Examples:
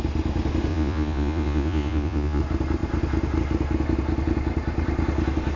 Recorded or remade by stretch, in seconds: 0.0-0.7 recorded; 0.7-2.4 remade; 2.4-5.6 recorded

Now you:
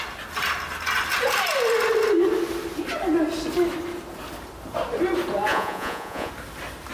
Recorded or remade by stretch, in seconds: 0.0-5.5 recorded; 5.5-6.3 remade; 6.3-6.9 recorded

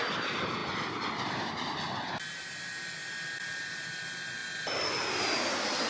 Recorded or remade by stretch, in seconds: 0.0-5.9 recorded